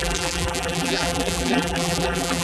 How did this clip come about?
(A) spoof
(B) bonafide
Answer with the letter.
A